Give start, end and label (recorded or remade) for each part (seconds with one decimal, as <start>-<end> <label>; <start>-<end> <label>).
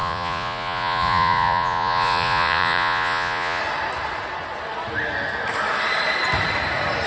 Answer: 0.0-3.6 remade; 3.6-7.1 recorded